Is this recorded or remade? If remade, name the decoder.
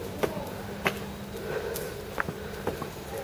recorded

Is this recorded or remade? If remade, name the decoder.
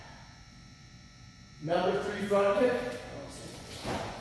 remade, vocoder, Vocos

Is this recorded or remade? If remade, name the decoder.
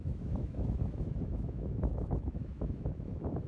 remade, autoencoder, DAC-VAE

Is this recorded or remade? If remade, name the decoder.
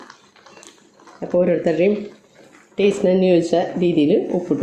recorded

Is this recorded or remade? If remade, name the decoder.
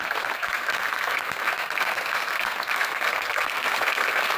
remade, codec, SNAC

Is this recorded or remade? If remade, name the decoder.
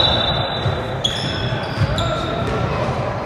remade, vocoder, BigVGAN v2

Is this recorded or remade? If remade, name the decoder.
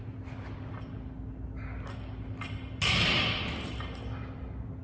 recorded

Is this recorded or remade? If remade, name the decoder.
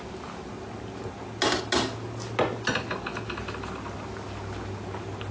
recorded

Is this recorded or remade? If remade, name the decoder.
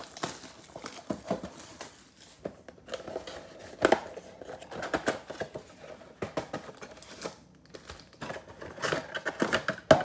recorded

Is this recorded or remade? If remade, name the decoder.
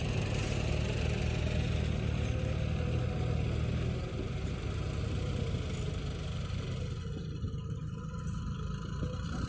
recorded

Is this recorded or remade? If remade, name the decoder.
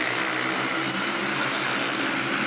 recorded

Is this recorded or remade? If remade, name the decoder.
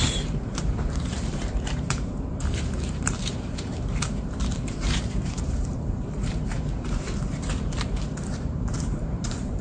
remade, vocoder, BigVGAN v2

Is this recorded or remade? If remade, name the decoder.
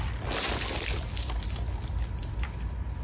recorded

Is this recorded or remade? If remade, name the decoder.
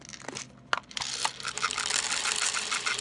recorded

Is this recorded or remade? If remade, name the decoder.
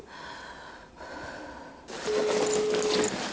recorded